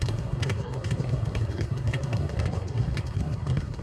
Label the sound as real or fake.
fake